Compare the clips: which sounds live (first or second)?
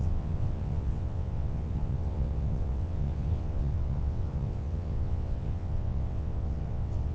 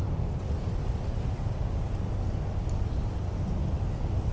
second